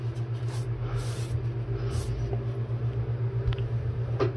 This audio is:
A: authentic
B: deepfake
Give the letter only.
A